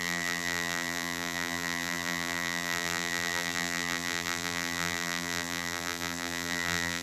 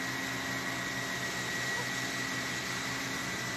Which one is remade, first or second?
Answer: first